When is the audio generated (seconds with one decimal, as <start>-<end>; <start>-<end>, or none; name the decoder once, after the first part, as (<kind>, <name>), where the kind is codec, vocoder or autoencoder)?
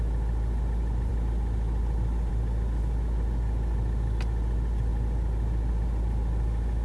none